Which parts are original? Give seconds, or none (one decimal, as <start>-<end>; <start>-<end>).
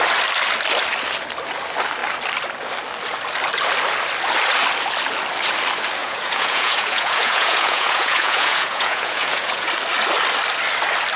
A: 0.0-6.0; 9.7-11.2